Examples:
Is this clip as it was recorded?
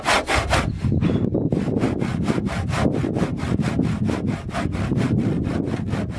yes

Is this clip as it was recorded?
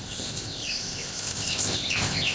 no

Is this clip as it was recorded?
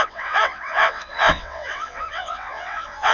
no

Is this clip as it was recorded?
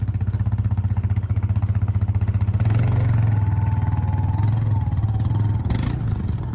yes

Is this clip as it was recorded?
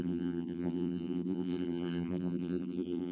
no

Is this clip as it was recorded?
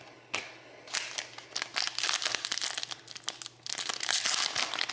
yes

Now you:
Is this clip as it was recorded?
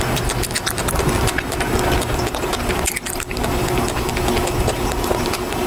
yes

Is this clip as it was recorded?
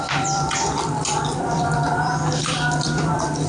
no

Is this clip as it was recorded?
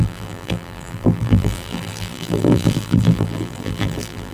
no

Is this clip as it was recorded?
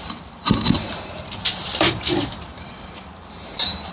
no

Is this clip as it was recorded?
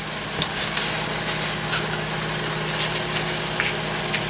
yes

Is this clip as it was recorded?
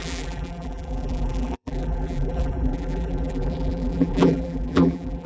no